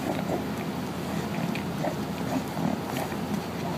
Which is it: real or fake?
real